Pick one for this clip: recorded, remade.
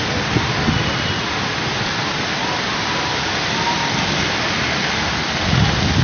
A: recorded